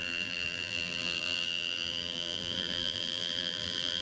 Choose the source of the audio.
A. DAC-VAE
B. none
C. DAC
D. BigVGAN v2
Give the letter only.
D